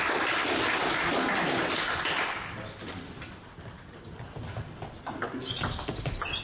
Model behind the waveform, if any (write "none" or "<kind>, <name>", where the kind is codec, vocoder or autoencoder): none